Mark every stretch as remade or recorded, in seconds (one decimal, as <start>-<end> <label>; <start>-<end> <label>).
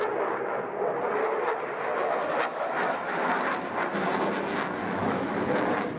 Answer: 0.0-2.5 recorded; 2.5-3.3 remade; 3.3-4.8 recorded; 4.8-5.4 remade; 5.4-6.0 recorded